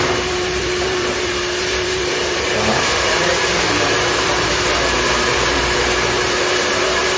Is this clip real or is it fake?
fake